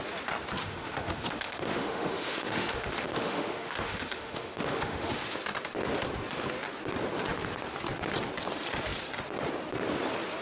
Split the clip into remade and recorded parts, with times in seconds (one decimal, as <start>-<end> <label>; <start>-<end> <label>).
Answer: 0.0-0.6 recorded; 0.6-5.1 remade; 5.1-10.4 recorded